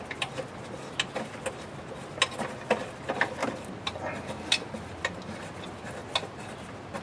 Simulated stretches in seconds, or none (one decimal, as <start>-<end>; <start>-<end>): none